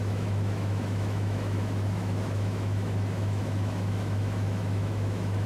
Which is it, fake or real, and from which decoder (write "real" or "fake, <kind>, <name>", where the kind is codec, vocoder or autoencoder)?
fake, autoencoder, DAC-VAE